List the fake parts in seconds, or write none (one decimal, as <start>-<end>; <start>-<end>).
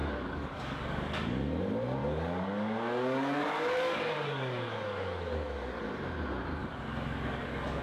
0.0-1.6; 2.0-5.8; 6.6-7.8